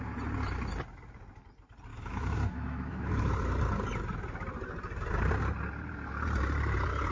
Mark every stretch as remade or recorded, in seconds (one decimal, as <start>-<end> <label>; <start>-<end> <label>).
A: 0.0-1.9 recorded; 1.9-3.3 remade; 3.3-7.1 recorded